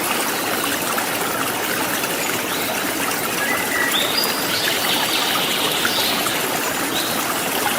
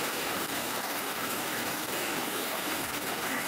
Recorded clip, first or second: first